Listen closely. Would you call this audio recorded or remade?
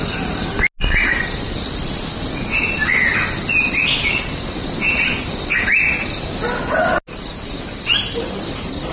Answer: recorded